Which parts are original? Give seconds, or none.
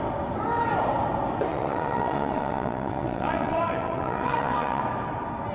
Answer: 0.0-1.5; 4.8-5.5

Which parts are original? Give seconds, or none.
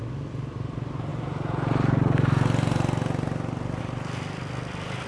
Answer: 1.1-3.8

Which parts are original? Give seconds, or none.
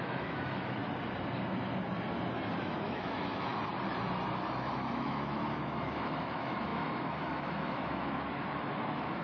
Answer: 0.8-2.6; 3.5-4.7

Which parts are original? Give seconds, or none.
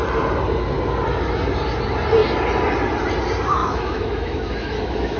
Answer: 0.0-3.6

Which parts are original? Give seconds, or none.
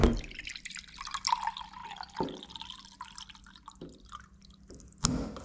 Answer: 0.0-5.4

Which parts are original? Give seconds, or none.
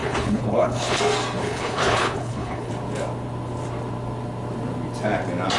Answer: 1.0-1.4; 2.7-5.6